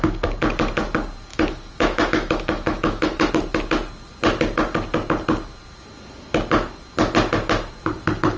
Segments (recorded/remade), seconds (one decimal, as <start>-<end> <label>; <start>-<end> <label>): 0.0-1.3 recorded; 1.3-3.3 remade; 3.3-8.4 recorded